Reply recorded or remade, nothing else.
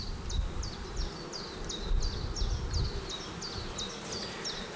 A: recorded